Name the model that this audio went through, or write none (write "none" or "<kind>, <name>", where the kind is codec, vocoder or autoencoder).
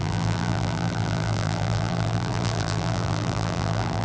vocoder, BigVGAN v2